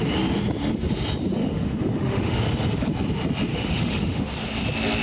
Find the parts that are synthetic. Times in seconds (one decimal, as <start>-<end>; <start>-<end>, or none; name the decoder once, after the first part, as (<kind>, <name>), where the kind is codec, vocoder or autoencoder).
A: 1.4-2.4 (autoencoder, DAC-VAE); 3.5-4.3